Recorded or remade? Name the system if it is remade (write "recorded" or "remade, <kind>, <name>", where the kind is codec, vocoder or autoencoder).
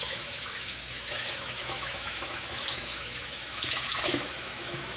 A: remade, autoencoder, DAC-VAE